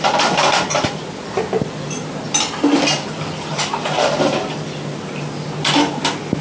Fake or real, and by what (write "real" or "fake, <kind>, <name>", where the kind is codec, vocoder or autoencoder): real